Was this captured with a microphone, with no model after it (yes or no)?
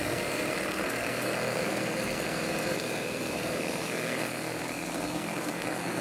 no